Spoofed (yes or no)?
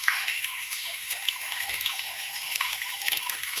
yes